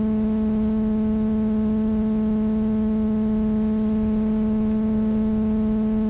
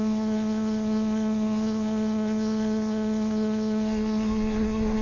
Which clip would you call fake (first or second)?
second